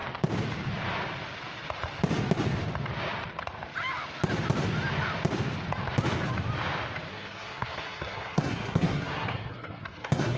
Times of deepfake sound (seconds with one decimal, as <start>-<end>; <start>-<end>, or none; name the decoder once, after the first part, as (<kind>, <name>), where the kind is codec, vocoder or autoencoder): 7.1-10.4 (codec, SNAC)